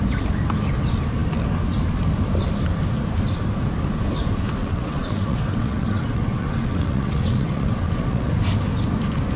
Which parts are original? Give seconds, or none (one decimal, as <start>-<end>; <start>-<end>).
0.0-4.6; 8.3-9.4